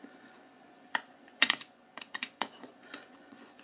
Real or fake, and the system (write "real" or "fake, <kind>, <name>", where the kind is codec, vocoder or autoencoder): fake, vocoder, Vocos